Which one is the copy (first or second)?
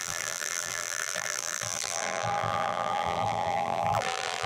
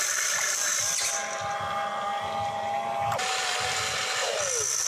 first